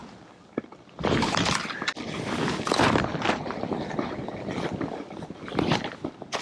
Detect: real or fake real